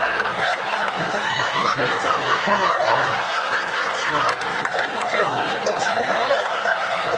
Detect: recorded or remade remade